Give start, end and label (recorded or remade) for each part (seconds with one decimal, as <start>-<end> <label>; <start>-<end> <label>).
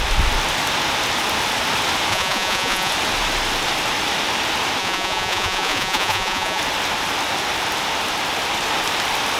0.0-2.1 recorded; 2.1-2.9 remade; 2.9-4.8 recorded; 4.8-6.6 remade; 6.6-9.4 recorded